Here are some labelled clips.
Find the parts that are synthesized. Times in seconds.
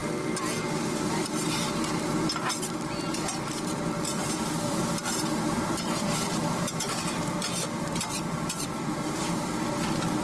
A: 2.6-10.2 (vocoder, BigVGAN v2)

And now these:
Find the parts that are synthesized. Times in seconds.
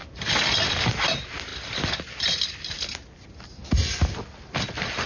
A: 0.0-0.5 (vocoder, BigVGAN v2); 1.5-2.6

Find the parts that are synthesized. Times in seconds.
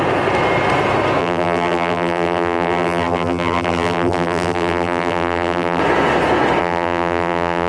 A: 1.2-5.8 (vocoder, BigVGAN v2); 6.6-7.7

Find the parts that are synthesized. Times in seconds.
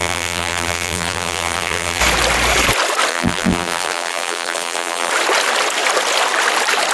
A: 0.0-2.0 (vocoder, BigVGAN v2); 3.1-5.1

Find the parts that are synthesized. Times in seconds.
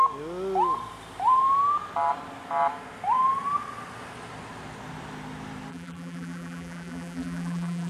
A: 5.7-7.9 (vocoder, BigVGAN v2)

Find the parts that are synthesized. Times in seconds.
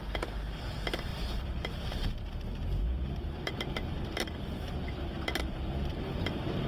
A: 1.1-5.1 (vocoder, BigVGAN v2); 5.9-6.7